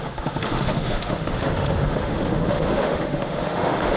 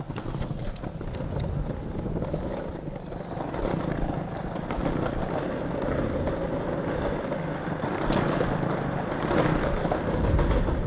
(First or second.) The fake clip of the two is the first